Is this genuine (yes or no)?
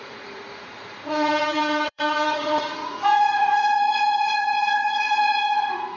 no